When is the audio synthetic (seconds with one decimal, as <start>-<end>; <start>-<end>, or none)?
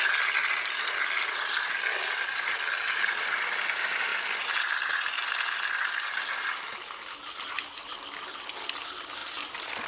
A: none